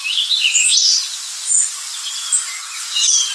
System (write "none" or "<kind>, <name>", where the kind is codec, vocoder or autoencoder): none